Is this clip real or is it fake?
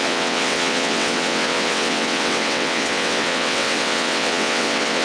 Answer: fake